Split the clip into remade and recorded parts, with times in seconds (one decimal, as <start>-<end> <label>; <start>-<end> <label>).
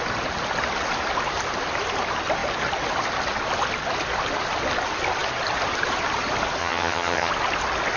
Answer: 0.0-6.6 recorded; 6.6-7.3 remade; 7.3-8.0 recorded